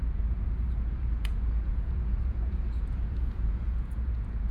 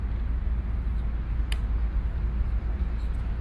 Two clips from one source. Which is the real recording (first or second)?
second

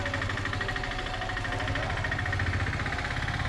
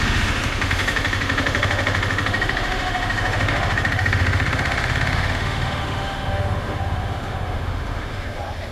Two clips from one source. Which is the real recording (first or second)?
first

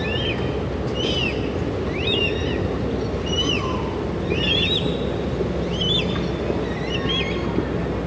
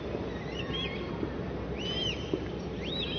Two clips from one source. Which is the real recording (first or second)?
first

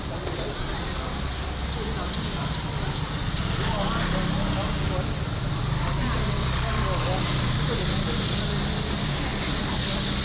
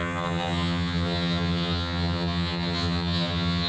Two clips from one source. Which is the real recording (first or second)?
first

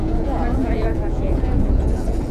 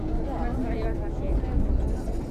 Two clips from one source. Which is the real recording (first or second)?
second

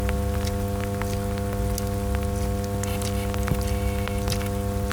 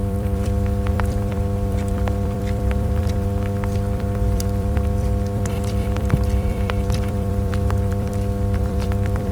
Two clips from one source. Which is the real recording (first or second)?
first